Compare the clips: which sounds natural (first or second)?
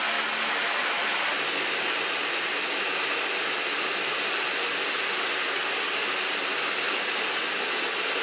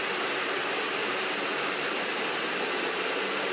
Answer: first